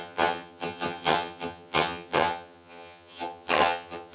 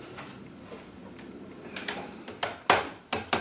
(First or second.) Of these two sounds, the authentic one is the second